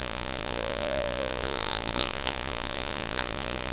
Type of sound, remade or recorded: remade